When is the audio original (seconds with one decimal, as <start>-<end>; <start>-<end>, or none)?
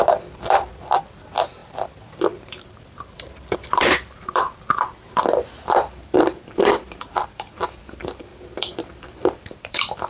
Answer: none